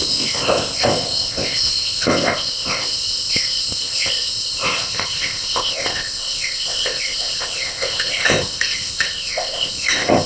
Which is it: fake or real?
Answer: fake